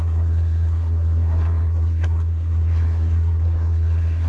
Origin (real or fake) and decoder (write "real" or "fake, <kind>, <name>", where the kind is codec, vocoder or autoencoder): fake, codec, SNAC